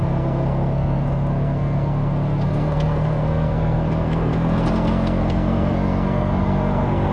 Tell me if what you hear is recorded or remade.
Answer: remade